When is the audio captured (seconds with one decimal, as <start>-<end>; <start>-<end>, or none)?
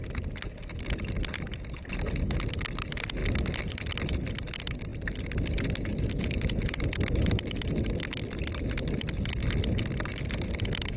0.0-3.2; 4.1-7.2; 10.1-11.0